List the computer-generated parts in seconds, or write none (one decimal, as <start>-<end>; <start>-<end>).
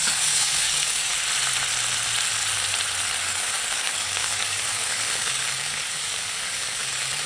0.0-1.1; 3.2-7.3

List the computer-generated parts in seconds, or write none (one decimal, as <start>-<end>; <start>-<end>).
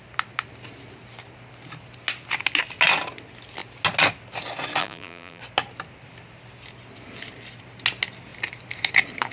4.8-5.4